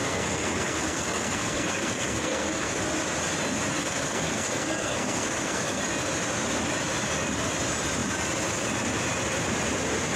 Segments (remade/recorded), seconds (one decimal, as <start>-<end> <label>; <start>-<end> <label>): 0.0-2.8 remade; 2.8-3.8 recorded; 3.8-5.8 remade; 5.8-10.2 recorded